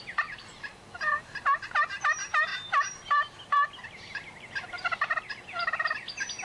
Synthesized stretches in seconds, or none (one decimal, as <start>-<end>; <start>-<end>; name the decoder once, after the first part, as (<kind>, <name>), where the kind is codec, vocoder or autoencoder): none